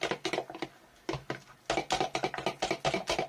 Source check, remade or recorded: recorded